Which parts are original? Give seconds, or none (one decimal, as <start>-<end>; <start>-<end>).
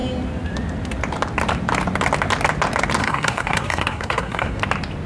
0.0-3.0; 4.6-5.1